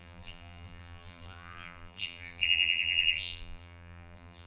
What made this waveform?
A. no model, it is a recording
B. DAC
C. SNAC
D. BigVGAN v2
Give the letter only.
D